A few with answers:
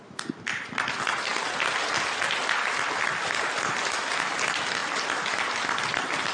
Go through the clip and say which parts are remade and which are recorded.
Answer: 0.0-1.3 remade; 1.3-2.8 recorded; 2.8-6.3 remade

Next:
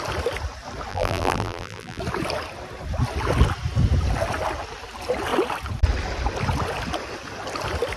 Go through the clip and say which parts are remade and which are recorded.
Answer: 0.0-0.9 recorded; 0.9-2.0 remade; 2.0-8.0 recorded

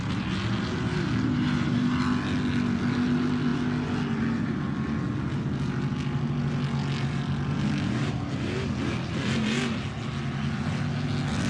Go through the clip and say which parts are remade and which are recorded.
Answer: 0.0-11.5 recorded

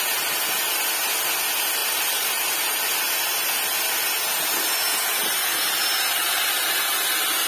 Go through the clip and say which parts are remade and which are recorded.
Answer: 0.0-1.8 recorded; 1.8-2.8 remade; 2.8-7.5 recorded

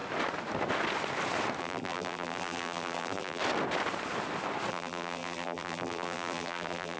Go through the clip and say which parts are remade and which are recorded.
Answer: 0.0-1.6 recorded; 1.6-3.4 remade; 3.4-4.7 recorded; 4.7-7.0 remade

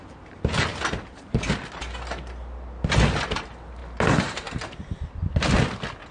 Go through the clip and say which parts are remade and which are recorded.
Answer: 0.0-6.1 recorded

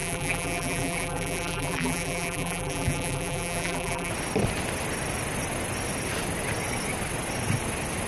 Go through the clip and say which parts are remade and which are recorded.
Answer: 0.0-4.1 remade; 4.1-8.1 recorded

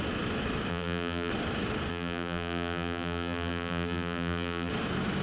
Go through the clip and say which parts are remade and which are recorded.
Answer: 0.0-0.7 recorded; 0.7-1.3 remade; 1.3-1.9 recorded; 1.9-4.7 remade; 4.7-5.2 recorded